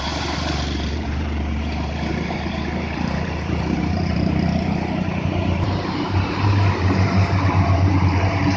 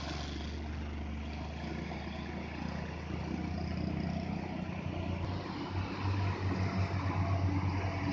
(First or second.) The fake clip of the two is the first